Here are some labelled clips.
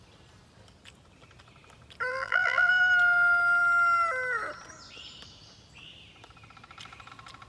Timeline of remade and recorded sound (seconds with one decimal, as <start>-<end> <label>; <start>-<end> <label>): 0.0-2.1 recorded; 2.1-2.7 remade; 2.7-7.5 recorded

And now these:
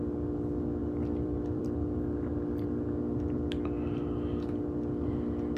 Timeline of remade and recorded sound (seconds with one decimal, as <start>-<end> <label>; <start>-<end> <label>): 0.0-0.8 recorded; 0.8-2.3 remade; 2.3-5.6 recorded

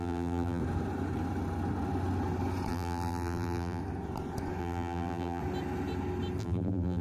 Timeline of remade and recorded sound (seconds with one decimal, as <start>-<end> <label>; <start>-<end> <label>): 0.0-0.6 remade; 0.6-2.7 recorded; 2.7-3.8 remade; 3.8-4.6 recorded; 4.6-5.4 remade; 5.4-6.4 recorded; 6.4-7.0 remade

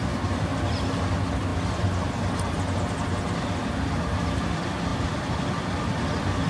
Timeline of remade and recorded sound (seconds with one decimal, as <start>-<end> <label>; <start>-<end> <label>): 0.0-1.5 recorded; 1.5-2.4 remade; 2.4-4.9 recorded; 4.9-6.5 remade

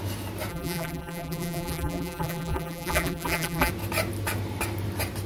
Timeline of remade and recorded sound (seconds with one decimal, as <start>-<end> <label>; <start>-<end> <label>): 0.0-0.5 recorded; 0.5-3.7 remade; 3.7-5.3 recorded